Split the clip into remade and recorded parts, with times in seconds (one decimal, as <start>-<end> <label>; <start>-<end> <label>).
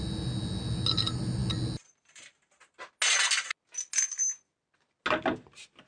0.0-5.9 recorded